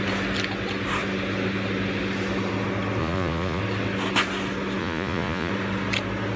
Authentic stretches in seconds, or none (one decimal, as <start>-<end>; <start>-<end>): 0.0-3.0; 3.6-4.8; 5.5-6.4

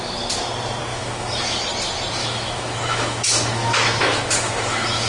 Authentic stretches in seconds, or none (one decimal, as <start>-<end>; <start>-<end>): 0.0-0.9; 1.6-2.2

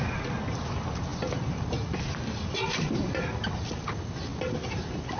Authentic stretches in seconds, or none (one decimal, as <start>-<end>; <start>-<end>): 0.0-5.2

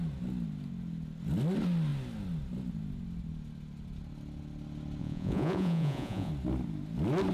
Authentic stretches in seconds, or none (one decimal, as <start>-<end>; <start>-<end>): 0.0-5.0; 6.3-7.3

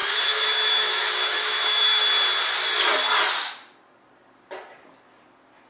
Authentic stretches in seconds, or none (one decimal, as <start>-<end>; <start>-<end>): 2.0-5.7

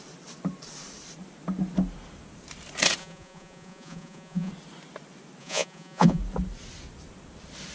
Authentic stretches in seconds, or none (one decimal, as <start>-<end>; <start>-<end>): 0.0-3.0; 4.5-5.4; 6.2-7.7